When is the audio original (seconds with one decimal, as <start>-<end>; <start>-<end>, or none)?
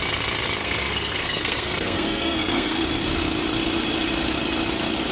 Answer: 0.0-0.6; 2.8-5.1